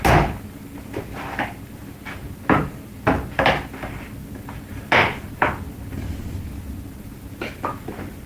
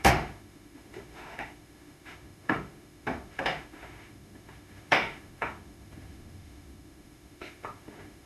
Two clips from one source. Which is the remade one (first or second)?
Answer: second